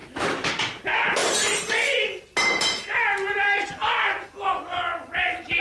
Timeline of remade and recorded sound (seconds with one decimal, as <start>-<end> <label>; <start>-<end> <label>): 0.0-0.5 remade; 0.5-5.6 recorded